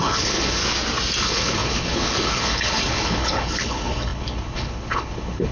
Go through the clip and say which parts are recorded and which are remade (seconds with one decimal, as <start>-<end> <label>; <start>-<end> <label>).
0.0-0.6 remade; 0.6-1.2 recorded; 1.2-5.5 remade